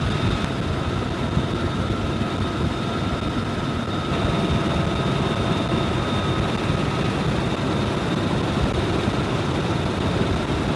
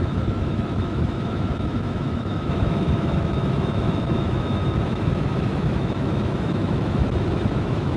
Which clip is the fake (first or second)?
second